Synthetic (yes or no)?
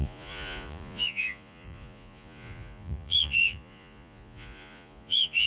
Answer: yes